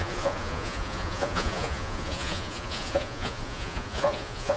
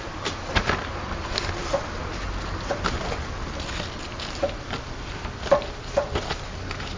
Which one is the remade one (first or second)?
first